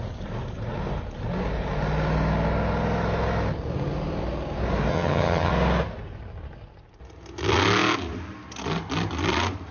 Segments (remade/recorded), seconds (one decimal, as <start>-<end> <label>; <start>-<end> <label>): 0.0-4.9 recorded; 4.9-5.5 remade; 5.5-9.7 recorded